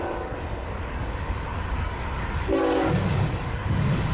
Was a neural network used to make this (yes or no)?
yes